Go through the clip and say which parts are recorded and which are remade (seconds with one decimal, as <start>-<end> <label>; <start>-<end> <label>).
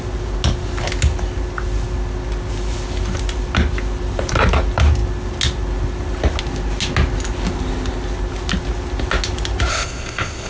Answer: 0.0-9.7 recorded; 9.7-10.5 remade